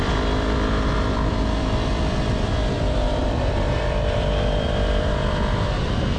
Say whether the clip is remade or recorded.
remade